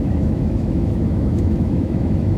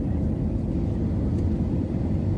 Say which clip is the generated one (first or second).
first